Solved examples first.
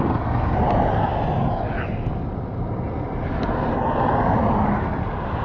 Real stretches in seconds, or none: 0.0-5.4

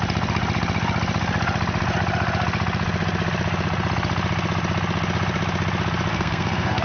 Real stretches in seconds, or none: 0.0-6.1

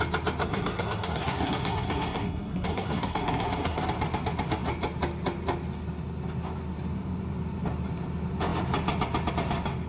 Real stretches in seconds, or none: 0.0-0.4; 3.8-9.9

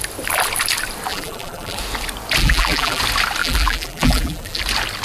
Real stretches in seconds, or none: 0.0-1.1; 1.8-2.4; 3.0-3.4; 4.6-5.0